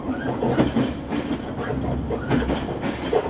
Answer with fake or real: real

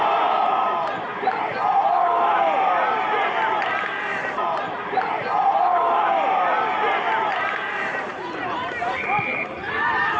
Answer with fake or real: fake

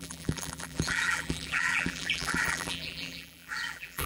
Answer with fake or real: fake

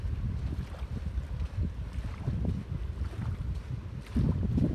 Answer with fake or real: real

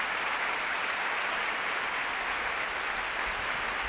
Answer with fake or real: real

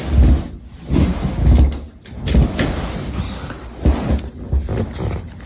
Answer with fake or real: real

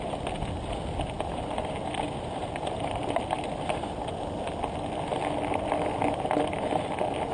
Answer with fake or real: real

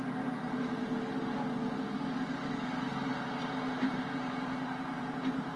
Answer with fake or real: real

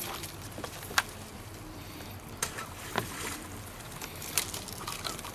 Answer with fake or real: fake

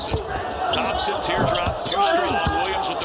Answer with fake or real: real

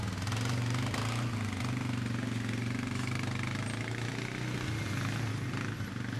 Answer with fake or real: real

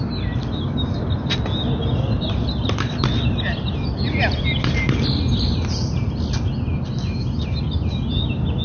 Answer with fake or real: real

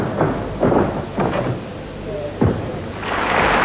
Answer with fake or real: real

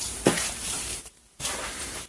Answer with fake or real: fake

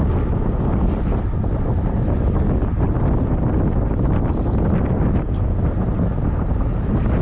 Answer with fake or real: real